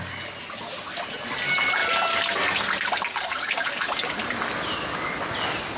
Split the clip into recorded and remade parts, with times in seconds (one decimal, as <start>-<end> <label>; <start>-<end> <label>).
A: 0.0-3.3 recorded; 3.3-3.8 remade; 3.8-5.8 recorded